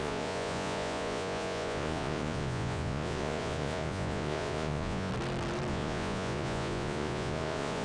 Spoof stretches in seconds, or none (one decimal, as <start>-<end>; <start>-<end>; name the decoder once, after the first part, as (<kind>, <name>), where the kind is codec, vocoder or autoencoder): 0.0-5.1 (vocoder, Vocos); 5.7-7.8